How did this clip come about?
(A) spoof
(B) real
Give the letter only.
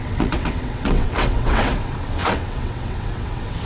A